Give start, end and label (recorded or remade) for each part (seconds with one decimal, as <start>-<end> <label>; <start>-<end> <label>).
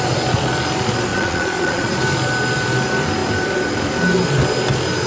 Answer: 0.0-1.1 recorded; 1.1-1.9 remade; 1.9-5.1 recorded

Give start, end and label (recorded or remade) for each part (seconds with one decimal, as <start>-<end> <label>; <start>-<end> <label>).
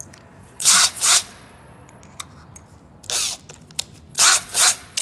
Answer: 0.0-0.4 recorded; 0.4-2.0 remade; 2.0-4.1 recorded; 4.1-5.0 remade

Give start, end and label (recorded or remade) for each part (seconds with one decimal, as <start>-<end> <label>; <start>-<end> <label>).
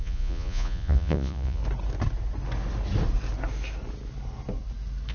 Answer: 0.0-1.6 remade; 1.6-5.1 recorded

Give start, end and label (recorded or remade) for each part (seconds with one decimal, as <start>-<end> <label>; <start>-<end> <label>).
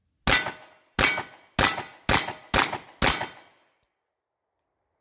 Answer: 0.0-5.0 recorded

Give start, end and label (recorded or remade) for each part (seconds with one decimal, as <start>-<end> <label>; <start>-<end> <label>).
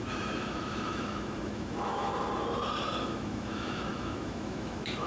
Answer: 0.0-2.1 remade; 2.1-3.0 recorded; 3.0-5.1 remade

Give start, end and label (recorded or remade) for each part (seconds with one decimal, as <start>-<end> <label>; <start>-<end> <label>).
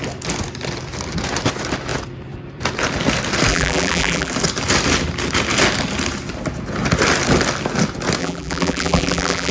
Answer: 0.0-3.5 recorded; 3.5-4.3 remade; 4.3-8.2 recorded; 8.2-9.5 remade